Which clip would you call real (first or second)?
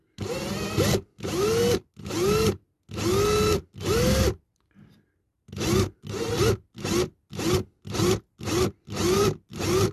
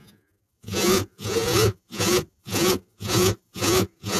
first